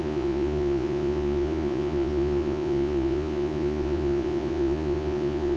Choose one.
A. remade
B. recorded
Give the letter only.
A